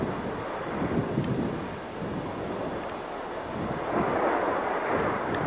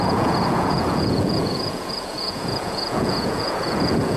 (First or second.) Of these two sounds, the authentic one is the first